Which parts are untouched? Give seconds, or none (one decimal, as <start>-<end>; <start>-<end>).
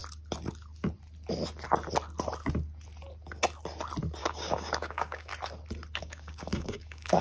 0.0-4.2; 5.3-6.0